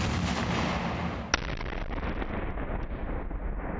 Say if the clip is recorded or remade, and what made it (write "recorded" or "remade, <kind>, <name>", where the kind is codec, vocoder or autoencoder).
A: recorded